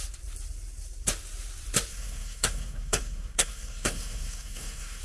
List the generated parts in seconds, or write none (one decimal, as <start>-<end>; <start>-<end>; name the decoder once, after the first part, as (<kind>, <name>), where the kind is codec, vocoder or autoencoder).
1.9-5.0 (codec, SNAC)